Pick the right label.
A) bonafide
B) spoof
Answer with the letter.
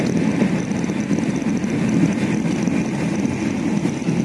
A